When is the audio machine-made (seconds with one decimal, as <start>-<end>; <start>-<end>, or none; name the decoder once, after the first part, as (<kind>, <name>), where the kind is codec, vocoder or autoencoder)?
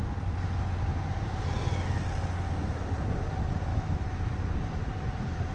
3.7-4.2 (autoencoder, DAC-VAE)